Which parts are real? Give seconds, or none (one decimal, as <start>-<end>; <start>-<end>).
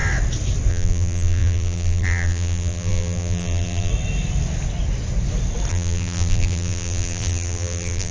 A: 0.0-0.7; 3.9-5.7